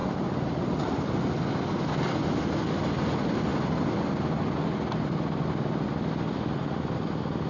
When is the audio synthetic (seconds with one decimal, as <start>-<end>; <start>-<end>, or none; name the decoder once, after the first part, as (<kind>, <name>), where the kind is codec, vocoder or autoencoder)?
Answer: none